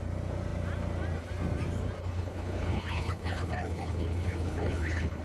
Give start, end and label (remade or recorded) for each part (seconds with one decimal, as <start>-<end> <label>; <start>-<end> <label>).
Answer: 0.0-2.0 recorded; 2.0-5.2 remade